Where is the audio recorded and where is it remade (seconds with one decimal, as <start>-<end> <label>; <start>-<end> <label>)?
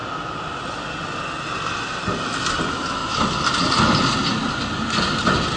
0.0-5.6 recorded